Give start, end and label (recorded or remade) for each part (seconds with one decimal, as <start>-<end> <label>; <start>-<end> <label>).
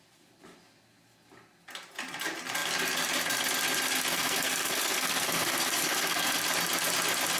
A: 0.0-4.1 recorded; 4.1-6.4 remade; 6.4-7.4 recorded